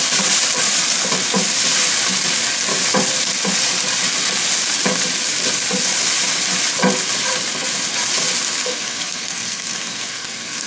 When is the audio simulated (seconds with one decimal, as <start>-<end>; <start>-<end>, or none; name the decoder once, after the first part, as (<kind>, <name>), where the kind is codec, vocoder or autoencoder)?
8.6-10.7 (codec, SNAC)